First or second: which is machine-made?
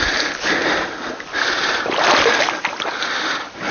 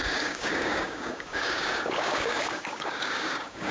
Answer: second